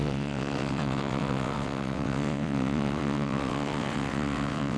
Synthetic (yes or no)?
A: yes